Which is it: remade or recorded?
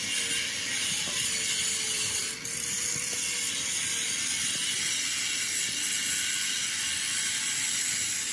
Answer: recorded